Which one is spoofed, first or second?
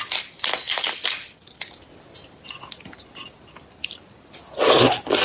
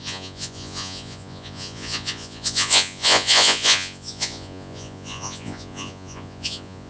second